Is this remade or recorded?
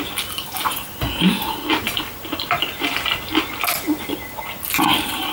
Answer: recorded